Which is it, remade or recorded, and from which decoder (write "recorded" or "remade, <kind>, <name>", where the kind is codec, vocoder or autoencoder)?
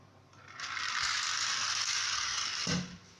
recorded